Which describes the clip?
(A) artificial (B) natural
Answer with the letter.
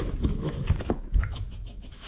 A